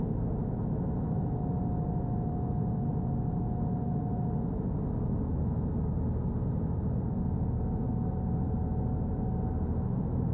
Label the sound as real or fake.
real